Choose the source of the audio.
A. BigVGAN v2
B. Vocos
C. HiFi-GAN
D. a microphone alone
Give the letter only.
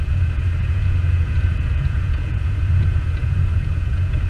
B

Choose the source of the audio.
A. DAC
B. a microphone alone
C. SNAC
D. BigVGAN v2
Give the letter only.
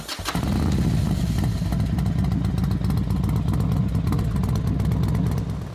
B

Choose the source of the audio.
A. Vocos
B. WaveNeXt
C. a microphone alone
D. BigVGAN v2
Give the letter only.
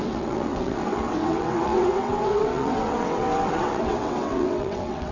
B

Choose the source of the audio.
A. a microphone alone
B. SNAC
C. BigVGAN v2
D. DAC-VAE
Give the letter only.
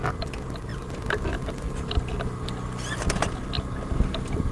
A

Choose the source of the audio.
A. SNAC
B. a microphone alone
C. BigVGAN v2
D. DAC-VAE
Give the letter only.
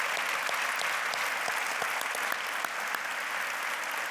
B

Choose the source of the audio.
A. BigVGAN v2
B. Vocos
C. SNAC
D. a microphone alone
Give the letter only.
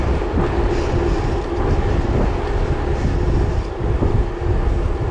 D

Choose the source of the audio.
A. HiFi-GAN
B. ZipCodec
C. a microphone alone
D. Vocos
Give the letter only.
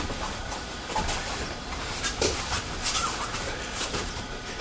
C